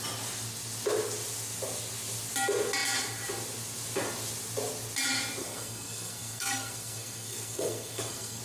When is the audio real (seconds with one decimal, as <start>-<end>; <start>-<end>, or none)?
0.0-5.4